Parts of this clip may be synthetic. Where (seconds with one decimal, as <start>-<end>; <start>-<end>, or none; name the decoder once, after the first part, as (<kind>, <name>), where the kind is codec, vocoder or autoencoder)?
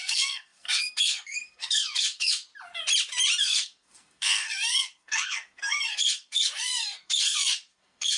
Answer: 0.0-2.5 (codec, SNAC); 3.4-8.2